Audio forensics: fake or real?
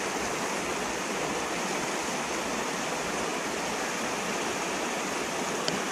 real